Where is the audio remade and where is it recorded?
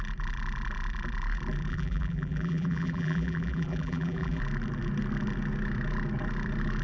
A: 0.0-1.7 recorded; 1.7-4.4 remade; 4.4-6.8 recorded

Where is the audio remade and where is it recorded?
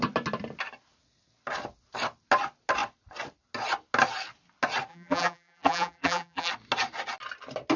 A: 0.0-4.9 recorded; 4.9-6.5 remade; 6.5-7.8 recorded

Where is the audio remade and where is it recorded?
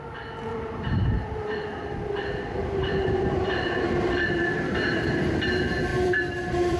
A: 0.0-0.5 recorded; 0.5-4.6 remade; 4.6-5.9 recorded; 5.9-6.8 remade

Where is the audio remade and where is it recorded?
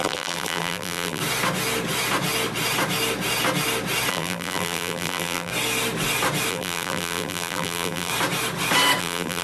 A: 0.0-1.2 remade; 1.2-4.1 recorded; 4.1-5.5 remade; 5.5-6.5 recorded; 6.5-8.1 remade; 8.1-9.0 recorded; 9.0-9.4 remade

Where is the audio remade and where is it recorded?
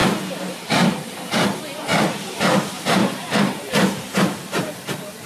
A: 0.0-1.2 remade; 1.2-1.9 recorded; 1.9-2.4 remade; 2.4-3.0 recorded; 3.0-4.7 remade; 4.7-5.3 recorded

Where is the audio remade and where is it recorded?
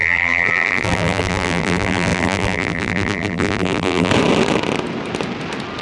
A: 0.0-4.1 remade; 4.1-5.8 recorded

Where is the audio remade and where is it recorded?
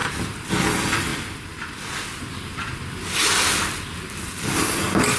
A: 0.0-0.5 recorded; 0.5-1.1 remade; 1.1-4.2 recorded; 4.2-5.2 remade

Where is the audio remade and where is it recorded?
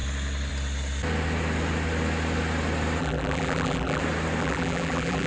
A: 0.0-3.0 recorded; 3.0-4.0 remade; 4.0-4.4 recorded; 4.4-5.3 remade